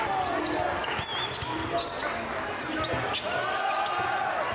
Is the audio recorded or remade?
recorded